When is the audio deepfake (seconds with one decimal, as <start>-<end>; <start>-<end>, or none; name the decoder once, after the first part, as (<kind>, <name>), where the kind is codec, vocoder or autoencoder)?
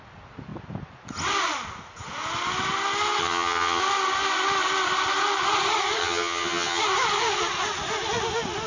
3.2-3.8 (vocoder, HiFi-GAN); 6.0-6.8